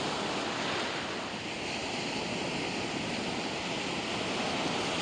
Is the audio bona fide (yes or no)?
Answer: yes